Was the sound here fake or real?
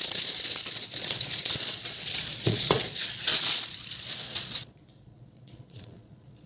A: fake